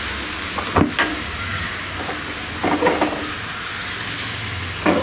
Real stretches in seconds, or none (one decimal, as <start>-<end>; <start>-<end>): 0.0-1.1; 2.0-4.2

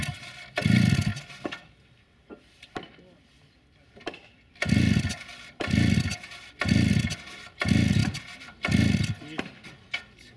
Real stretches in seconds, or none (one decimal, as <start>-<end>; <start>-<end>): 0.0-10.4

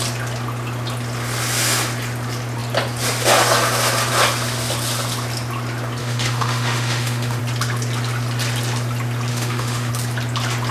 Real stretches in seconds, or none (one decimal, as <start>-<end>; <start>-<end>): 0.0-6.0; 7.4-9.3; 9.9-10.7